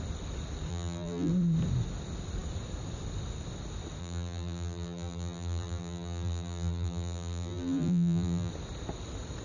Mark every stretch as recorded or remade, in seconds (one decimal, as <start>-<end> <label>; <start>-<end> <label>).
0.0-0.7 recorded; 0.7-1.3 remade; 1.3-4.0 recorded; 4.0-8.5 remade; 8.5-9.4 recorded